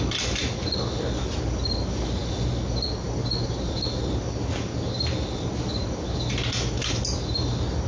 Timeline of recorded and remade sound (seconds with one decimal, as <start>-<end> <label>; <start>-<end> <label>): 0.0-7.9 recorded